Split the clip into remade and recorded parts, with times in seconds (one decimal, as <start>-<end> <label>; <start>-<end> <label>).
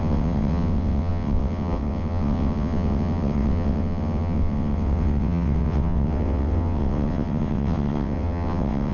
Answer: 0.0-8.9 remade